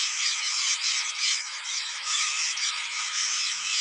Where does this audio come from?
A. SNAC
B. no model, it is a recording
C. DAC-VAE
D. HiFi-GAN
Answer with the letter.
C